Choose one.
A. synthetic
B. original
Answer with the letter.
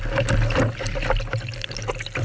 B